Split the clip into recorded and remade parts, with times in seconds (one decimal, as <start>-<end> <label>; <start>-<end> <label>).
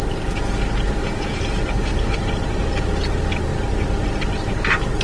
0.0-1.0 recorded; 1.0-2.3 remade; 2.3-5.0 recorded